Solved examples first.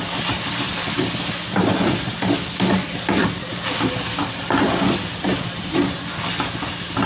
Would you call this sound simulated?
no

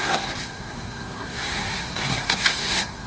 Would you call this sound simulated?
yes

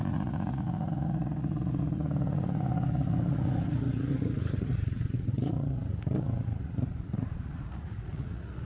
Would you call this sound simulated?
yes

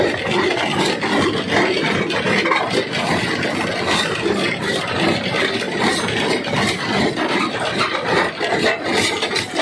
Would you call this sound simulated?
no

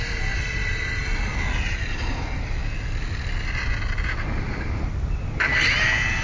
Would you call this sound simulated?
no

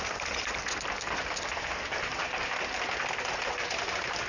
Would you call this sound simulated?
no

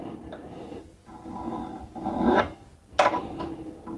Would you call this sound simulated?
no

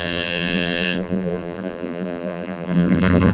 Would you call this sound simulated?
yes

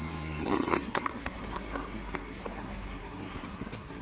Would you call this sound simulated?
yes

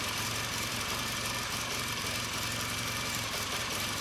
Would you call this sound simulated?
yes